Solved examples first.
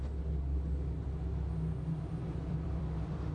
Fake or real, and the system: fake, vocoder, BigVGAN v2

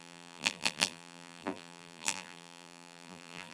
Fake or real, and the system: fake, vocoder, BigVGAN v2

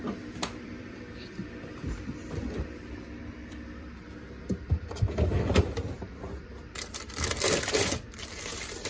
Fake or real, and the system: fake, vocoder, BigVGAN v2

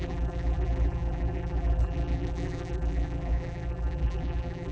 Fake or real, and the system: fake, vocoder, BigVGAN v2